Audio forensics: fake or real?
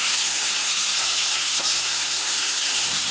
fake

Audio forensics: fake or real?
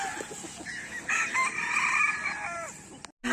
real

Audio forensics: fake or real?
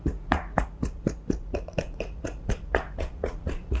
fake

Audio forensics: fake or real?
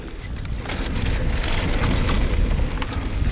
real